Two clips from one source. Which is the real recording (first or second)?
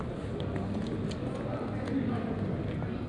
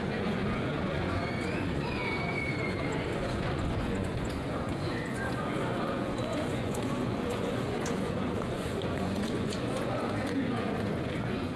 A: first